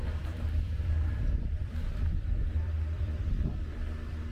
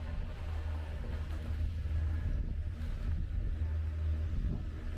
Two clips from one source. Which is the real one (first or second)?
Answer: second